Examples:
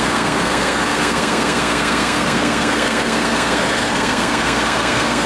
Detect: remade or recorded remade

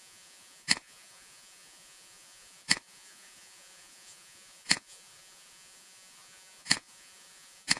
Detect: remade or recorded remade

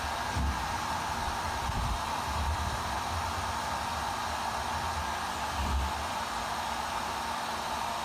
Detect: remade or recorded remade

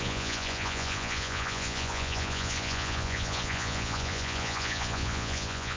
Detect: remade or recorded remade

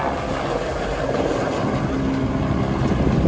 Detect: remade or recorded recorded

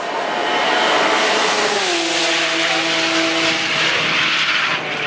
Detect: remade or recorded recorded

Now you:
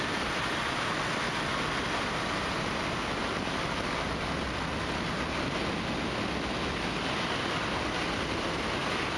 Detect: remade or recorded recorded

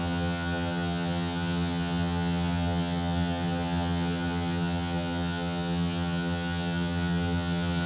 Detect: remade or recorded remade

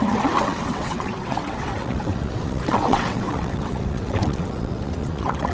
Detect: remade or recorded remade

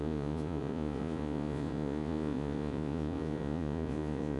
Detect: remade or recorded remade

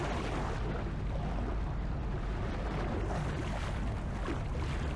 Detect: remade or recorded recorded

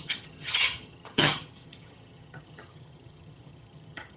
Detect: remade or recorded remade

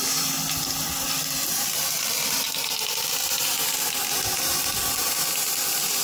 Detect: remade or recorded recorded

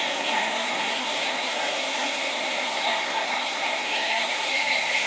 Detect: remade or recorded remade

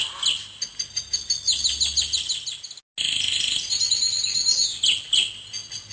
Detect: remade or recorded recorded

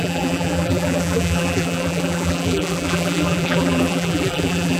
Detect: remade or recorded remade